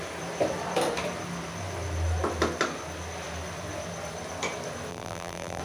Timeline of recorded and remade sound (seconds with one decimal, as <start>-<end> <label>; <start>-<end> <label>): 0.0-4.9 recorded; 4.9-5.6 remade